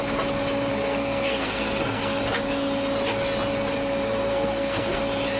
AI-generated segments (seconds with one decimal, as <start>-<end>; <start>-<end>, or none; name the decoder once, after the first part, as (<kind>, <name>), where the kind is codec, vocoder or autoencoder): 0.7-2.2 (codec, SNAC); 4.3-5.0